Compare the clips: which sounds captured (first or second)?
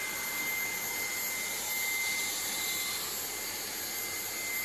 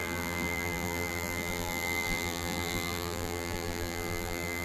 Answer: first